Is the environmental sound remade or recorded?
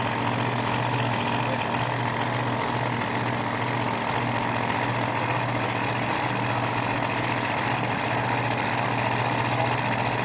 recorded